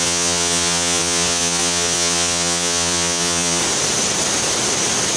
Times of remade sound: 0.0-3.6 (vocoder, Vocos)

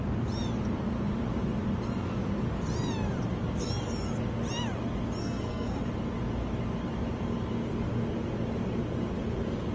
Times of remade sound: 5.2-5.8 (codec, SNAC)

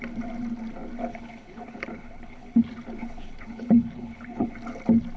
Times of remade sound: 1.1-2.6 (codec, HILCodec); 3.0-4.5